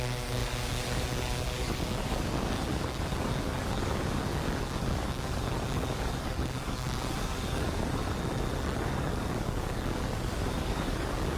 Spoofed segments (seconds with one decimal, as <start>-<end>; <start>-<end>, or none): 0.0-8.0; 8.8-11.4